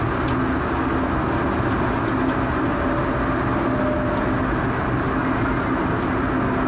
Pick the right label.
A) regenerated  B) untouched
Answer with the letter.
B